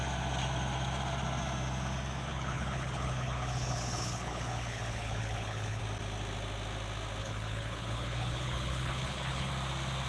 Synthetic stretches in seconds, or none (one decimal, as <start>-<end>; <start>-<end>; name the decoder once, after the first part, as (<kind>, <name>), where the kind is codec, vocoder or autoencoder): 2.3-5.8 (codec, HILCodec); 7.2-9.5